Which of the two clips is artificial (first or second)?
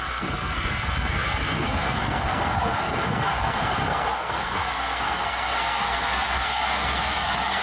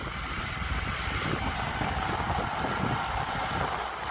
first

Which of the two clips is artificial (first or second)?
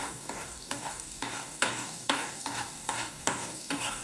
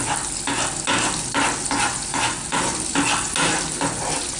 first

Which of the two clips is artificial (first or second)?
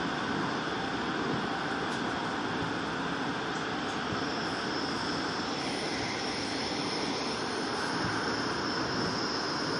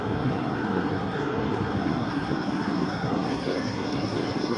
second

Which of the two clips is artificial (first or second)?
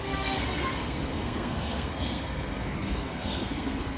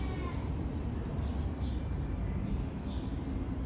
first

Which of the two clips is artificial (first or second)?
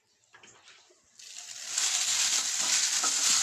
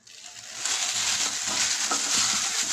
first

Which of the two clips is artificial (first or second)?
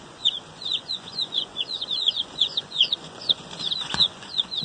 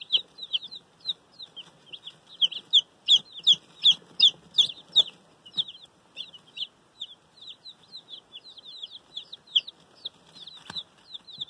first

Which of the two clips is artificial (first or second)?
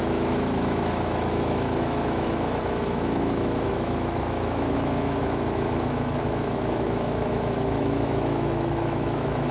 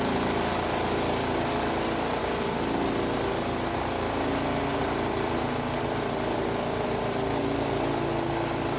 first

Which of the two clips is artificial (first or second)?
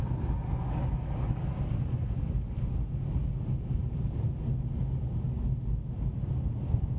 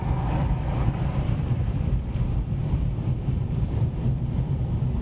second